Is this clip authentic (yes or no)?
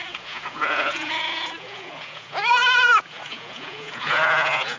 no